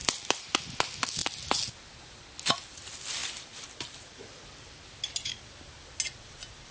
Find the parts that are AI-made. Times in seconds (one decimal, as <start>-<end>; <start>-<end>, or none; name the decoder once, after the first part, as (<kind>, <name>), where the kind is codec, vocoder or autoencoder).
0.0-0.6 (vocoder, BigVGAN v2)